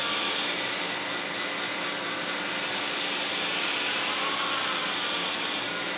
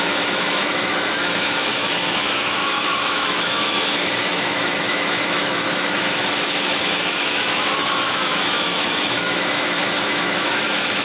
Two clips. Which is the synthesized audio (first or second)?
second